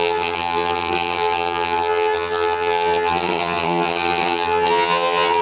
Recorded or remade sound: remade